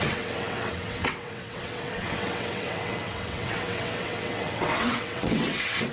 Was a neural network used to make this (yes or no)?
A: yes